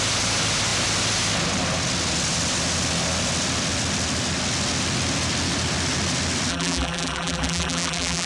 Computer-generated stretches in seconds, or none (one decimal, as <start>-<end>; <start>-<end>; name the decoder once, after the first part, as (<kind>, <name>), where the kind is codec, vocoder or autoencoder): 6.5-8.3 (vocoder, BigVGAN v2)